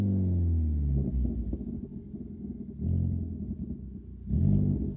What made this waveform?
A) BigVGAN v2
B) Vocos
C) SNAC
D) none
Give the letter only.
D